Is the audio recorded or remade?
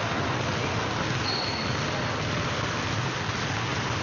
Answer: recorded